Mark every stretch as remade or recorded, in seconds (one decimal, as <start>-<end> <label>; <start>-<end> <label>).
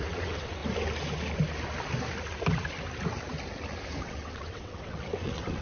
0.0-0.6 remade; 0.6-4.0 recorded; 4.0-5.6 remade